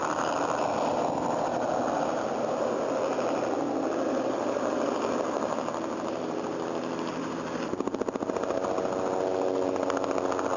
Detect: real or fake real